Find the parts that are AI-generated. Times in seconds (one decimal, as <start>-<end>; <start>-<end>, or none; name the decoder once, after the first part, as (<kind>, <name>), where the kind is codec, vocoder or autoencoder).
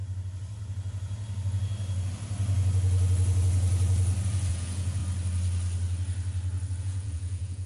4.5-5.0 (vocoder, Vocos); 6.8-7.7